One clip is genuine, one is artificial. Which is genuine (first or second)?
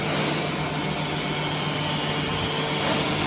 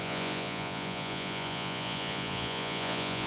first